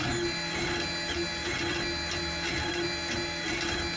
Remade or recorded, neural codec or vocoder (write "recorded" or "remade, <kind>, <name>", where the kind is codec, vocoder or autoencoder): recorded